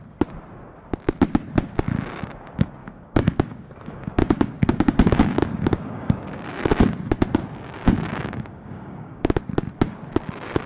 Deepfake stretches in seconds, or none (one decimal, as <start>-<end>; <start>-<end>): 2.8-6.4; 7.4-9.4